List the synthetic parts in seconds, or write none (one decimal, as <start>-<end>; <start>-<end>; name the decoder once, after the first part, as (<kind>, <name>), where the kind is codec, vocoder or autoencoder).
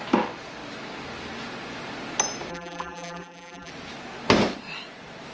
2.5-3.7 (vocoder, BigVGAN v2)